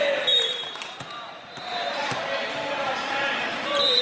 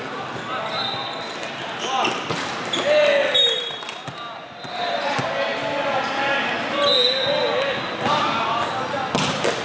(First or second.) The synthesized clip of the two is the first